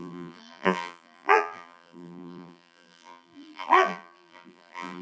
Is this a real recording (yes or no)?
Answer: no